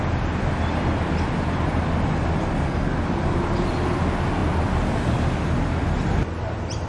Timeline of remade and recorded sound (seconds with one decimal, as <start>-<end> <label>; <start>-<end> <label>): 0.0-6.9 recorded